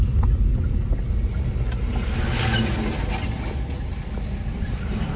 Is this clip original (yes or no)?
yes